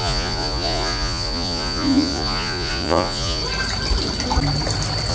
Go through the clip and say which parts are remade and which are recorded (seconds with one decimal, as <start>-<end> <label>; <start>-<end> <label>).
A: 0.0-3.4 remade; 3.4-5.1 recorded